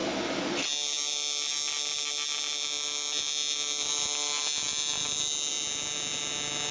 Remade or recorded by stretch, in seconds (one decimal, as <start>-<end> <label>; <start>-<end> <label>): 0.0-6.7 recorded